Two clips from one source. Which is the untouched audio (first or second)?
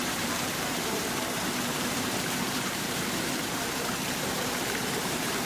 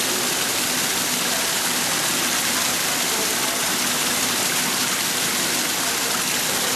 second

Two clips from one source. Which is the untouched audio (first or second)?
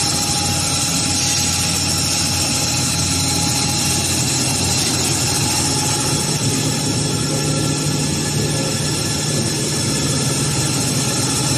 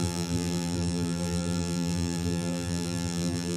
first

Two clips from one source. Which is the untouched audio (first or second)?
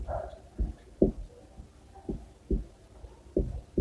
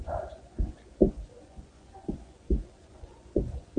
first